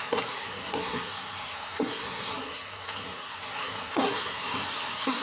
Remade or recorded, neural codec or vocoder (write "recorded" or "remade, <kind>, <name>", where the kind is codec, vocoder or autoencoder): remade, codec, SNAC